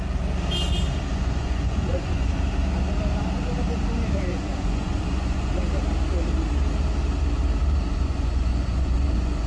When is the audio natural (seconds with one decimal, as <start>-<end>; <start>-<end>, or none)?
0.0-1.1; 2.3-4.3; 5.5-7.9